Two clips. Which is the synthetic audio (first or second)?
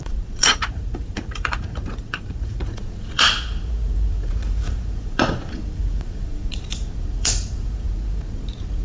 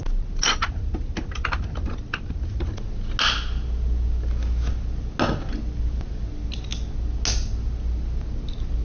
first